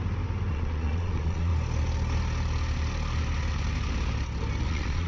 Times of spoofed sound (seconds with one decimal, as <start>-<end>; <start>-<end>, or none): 0.5-1.5; 4.6-5.1

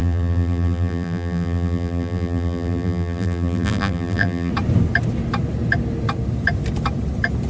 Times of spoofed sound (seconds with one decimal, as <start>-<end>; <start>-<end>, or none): 0.0-4.5

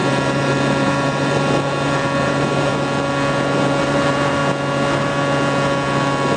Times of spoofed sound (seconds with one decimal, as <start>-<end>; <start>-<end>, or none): 0.0-2.7; 3.8-4.4

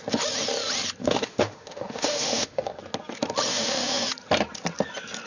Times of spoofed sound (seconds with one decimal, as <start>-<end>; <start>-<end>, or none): 1.0-2.8; 3.5-4.0

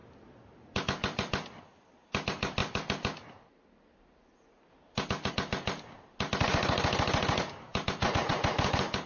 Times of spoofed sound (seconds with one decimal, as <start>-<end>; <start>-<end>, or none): none